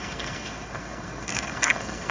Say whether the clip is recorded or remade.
remade